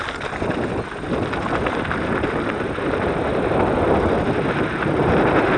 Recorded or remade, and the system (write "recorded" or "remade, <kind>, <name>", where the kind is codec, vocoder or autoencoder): recorded